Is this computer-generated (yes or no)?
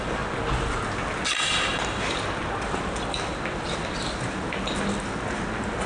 no